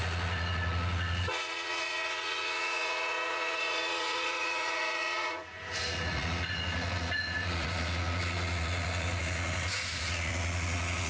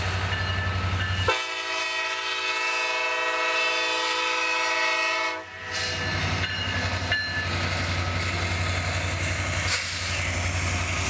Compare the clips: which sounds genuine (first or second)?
second